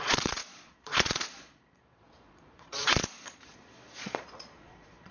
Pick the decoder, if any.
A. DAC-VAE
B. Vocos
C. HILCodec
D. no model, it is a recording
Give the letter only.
B